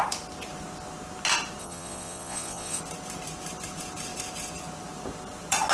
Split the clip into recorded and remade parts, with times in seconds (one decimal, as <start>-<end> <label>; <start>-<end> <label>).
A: 0.0-1.6 recorded; 1.6-2.8 remade; 2.8-5.7 recorded